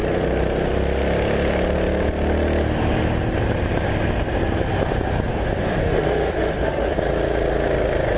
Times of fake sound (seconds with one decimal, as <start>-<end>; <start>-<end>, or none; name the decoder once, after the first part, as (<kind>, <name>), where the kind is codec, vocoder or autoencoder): 5.3-6.9 (autoencoder, DAC-VAE)

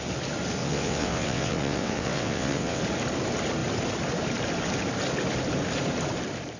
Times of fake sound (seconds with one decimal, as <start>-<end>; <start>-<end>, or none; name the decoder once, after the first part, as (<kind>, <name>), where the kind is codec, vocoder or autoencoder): 0.6-2.8 (vocoder, WaveNeXt)